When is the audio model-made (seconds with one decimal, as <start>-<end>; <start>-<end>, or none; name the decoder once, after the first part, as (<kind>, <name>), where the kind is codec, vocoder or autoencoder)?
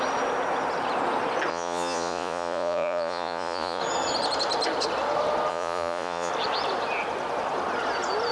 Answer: 1.5-3.8 (vocoder, Vocos); 5.5-6.3